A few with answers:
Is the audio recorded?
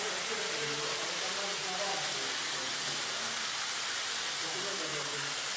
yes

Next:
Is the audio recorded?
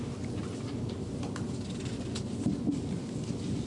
yes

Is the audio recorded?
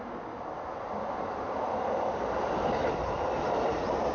no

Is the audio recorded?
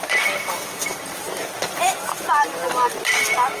yes